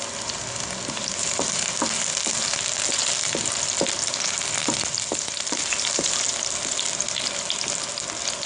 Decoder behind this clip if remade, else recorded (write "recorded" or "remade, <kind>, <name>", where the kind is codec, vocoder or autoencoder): recorded